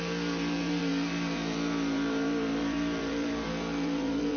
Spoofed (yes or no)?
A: yes